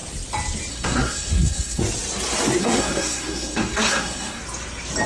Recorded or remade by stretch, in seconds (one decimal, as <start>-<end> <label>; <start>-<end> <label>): 0.0-0.7 recorded; 0.7-1.8 remade; 1.8-2.6 recorded; 2.6-4.4 remade; 4.4-5.1 recorded